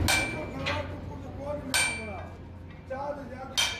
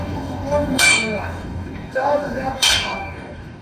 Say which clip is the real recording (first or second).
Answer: first